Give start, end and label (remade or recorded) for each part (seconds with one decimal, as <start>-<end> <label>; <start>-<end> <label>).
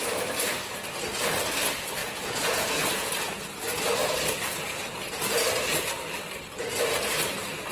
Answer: 0.0-2.0 recorded; 2.0-3.3 remade; 3.3-7.7 recorded